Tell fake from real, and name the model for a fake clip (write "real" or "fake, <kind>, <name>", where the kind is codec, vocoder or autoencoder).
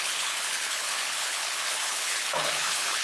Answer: fake, codec, HILCodec